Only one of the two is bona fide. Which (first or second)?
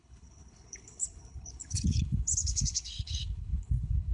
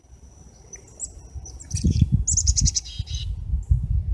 second